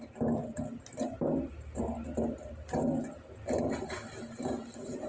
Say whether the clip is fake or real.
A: real